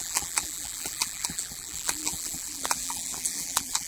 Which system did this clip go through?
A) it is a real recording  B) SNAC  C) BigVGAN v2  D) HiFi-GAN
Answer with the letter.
C